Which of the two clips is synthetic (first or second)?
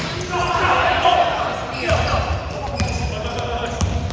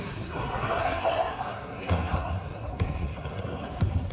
second